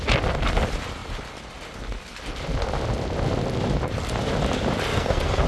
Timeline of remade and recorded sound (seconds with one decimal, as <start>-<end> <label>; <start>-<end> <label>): 0.0-4.9 recorded; 4.9-5.5 remade